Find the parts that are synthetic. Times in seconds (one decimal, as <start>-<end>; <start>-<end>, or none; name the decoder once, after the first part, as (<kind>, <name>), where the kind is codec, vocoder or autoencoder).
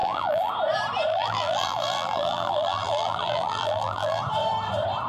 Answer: 0.0-0.5 (vocoder, BigVGAN v2); 1.1-4.2